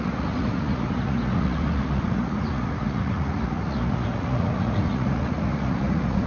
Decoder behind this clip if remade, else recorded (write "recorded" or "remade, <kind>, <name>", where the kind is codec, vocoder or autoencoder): remade, vocoder, Vocos